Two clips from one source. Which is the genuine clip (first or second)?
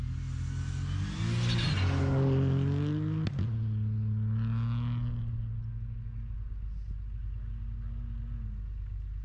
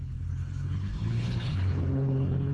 first